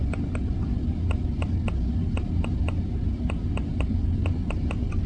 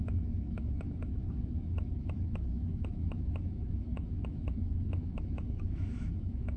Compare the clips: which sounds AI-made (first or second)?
second